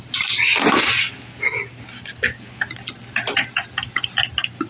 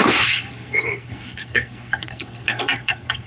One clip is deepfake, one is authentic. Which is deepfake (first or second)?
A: second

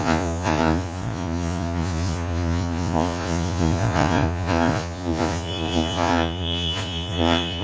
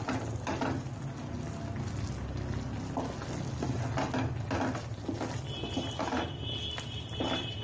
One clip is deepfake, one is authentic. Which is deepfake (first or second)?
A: first